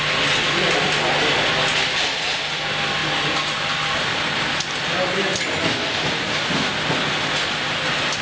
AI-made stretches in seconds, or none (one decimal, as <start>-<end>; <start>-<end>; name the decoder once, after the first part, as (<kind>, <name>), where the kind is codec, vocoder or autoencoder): none